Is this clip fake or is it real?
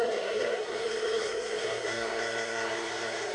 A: fake